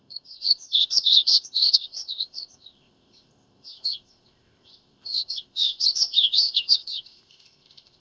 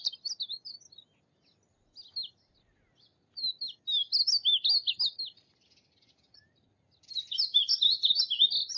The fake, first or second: first